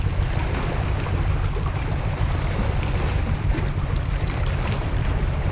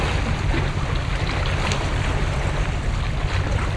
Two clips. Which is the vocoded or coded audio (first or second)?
first